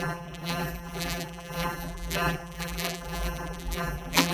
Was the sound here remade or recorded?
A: remade